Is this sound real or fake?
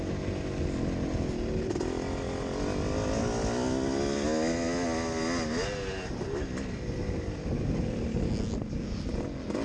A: real